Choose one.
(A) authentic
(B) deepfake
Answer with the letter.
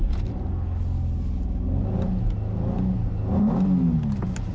A